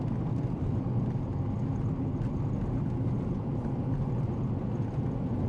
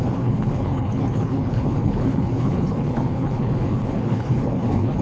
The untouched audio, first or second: first